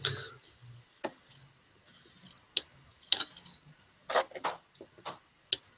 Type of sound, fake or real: real